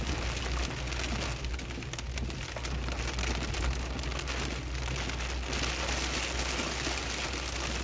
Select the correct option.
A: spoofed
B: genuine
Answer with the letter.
B